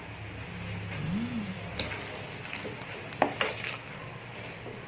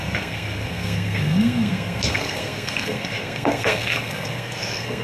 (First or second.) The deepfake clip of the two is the second